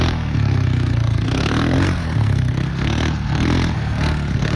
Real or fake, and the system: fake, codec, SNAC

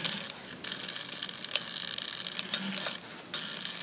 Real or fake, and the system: real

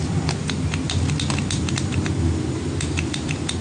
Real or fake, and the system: real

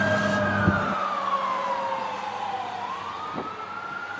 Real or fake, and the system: real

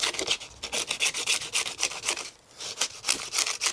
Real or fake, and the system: real